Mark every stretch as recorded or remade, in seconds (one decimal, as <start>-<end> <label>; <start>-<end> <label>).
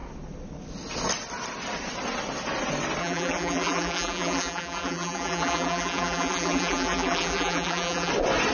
0.0-3.0 recorded; 3.0-8.1 remade; 8.1-8.5 recorded